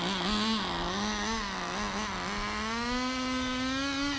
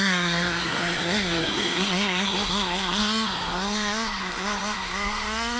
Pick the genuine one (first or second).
first